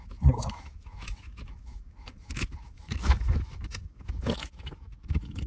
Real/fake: fake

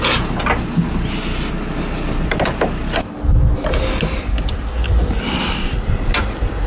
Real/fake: real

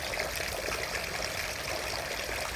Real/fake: real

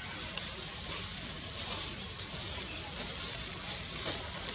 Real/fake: real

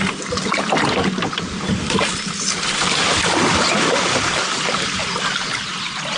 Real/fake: real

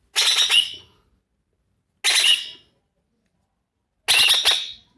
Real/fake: real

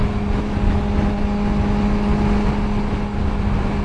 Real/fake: real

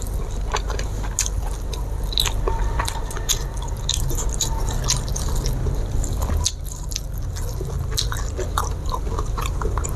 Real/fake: real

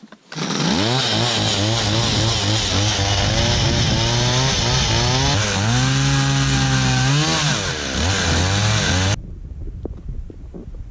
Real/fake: real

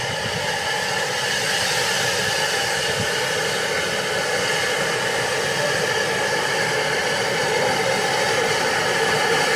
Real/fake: real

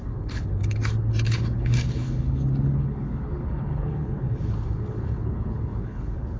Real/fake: fake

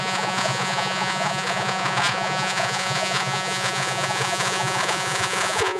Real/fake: fake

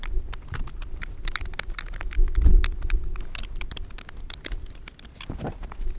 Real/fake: real